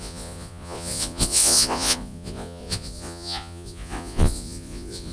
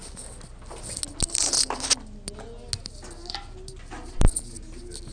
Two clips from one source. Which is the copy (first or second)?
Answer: first